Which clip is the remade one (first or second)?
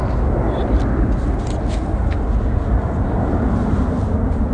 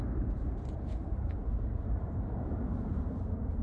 second